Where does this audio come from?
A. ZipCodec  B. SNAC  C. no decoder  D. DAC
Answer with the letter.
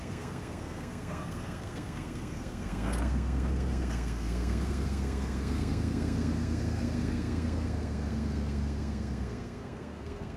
B